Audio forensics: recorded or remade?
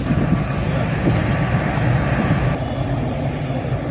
recorded